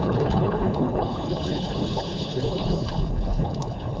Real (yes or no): no